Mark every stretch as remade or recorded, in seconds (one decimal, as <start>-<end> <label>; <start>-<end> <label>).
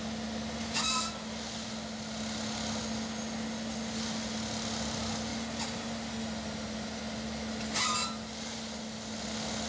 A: 0.0-9.7 recorded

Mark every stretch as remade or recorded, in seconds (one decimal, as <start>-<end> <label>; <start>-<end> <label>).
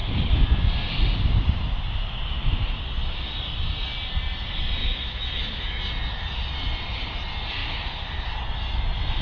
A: 0.0-4.8 recorded; 4.8-5.8 remade; 5.8-7.6 recorded; 7.6-8.3 remade; 8.3-9.2 recorded